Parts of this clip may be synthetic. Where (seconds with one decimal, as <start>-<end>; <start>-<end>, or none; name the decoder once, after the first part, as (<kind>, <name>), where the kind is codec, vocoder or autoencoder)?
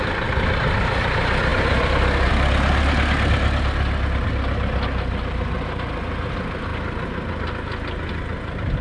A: 1.5-2.3 (vocoder, BigVGAN v2)